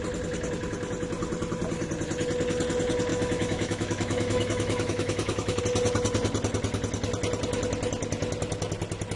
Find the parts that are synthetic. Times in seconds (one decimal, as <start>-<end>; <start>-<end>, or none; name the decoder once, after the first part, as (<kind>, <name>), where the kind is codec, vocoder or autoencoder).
3.1-5.6 (autoencoder, DAC-VAE)